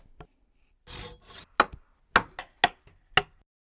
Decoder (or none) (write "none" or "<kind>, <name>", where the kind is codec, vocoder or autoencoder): none